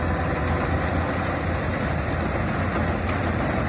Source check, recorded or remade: recorded